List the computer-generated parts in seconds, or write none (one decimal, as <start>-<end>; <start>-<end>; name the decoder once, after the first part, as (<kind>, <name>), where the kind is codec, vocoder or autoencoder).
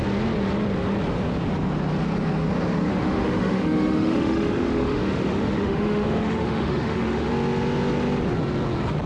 2.9-7.3 (autoencoder, DAC-VAE)